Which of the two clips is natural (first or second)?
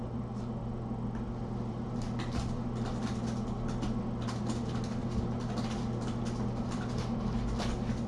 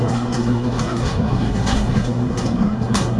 first